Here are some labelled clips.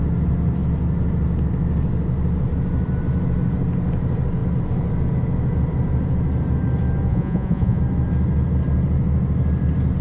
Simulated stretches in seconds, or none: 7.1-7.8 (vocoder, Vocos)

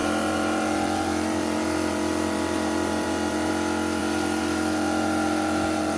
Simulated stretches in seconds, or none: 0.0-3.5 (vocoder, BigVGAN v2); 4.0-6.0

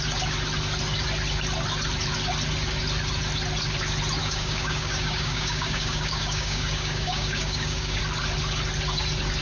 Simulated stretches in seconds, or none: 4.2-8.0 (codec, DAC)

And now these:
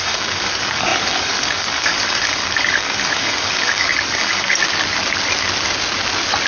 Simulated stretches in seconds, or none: 0.0-4.6 (codec, DAC)

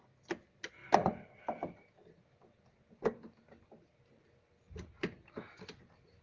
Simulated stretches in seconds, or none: none